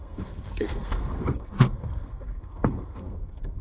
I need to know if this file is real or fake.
fake